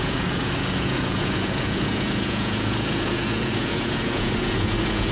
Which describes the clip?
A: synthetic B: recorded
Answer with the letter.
A